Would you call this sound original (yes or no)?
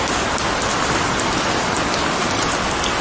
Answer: yes